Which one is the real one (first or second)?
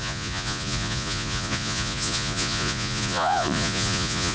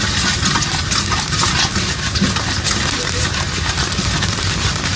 second